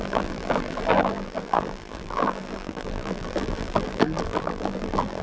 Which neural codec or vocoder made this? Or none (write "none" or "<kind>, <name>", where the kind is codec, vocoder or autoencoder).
vocoder, BigVGAN v2